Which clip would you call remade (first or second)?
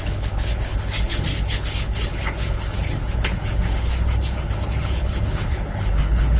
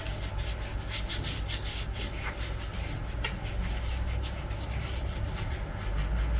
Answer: first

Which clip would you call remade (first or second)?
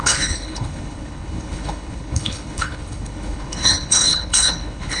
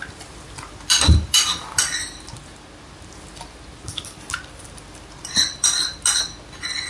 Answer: first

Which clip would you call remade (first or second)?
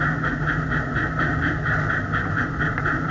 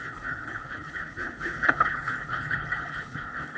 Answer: second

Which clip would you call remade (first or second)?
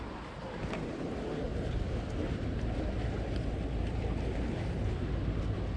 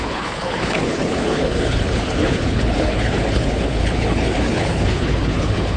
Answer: second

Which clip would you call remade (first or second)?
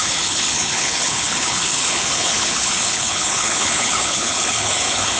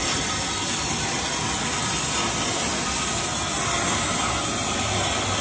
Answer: first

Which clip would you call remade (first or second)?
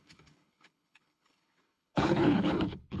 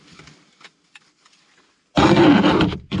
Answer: first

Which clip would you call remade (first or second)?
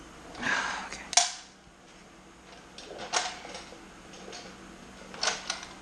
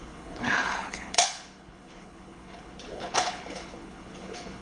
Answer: second